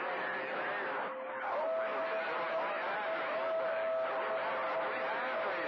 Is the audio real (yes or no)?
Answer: yes